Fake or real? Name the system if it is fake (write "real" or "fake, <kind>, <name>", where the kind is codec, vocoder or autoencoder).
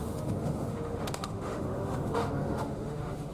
fake, autoencoder, DAC-VAE